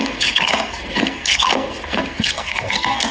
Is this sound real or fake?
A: fake